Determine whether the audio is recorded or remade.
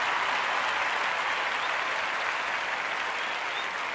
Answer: recorded